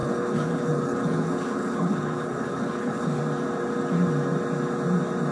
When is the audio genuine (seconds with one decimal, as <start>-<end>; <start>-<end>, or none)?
3.2-5.3

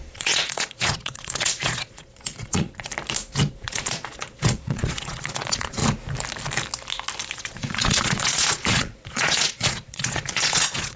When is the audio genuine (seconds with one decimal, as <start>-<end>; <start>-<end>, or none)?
2.9-3.5; 5.8-7.3

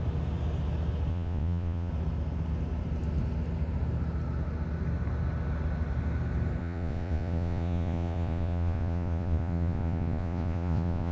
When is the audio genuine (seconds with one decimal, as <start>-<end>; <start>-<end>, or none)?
0.0-1.1; 1.9-6.6

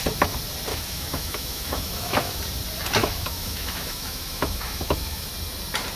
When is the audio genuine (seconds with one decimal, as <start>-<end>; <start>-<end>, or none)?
0.0-0.7; 2.4-3.0; 5.3-6.0

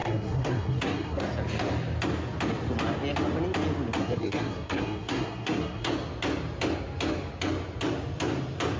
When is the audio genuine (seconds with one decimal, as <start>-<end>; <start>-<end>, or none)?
1.2-4.0; 5.9-8.8

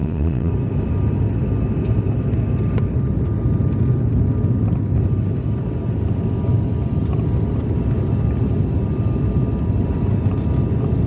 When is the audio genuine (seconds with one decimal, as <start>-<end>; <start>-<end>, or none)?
0.5-11.1

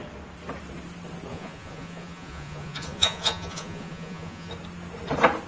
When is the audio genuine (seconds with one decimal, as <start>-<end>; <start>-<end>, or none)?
0.0-1.3; 4.5-5.5

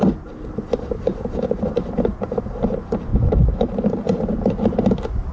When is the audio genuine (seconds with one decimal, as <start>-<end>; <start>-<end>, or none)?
0.0-3.1; 3.7-5.3